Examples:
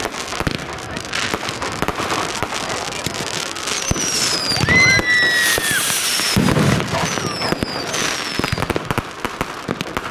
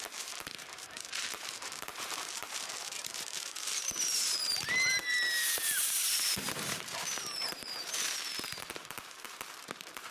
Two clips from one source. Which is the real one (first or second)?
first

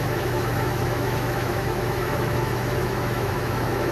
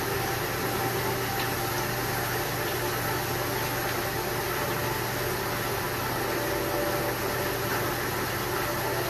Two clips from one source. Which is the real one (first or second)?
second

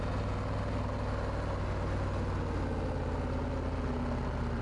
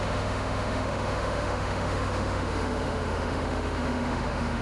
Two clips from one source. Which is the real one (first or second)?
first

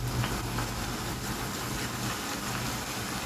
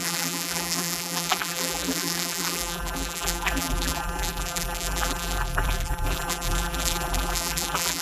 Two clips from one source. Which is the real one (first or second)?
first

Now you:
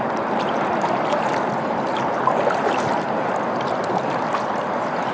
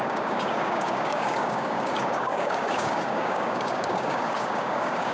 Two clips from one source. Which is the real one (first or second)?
first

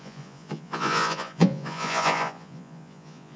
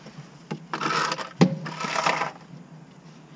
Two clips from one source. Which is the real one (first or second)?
second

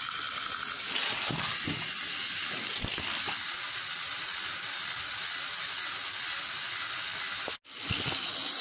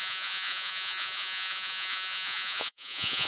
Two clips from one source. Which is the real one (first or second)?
first